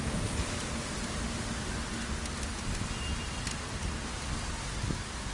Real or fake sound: real